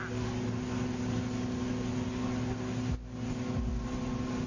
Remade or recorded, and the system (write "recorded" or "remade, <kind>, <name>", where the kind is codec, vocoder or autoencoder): recorded